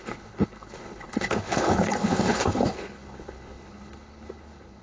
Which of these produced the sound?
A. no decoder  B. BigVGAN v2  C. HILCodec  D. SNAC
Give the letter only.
C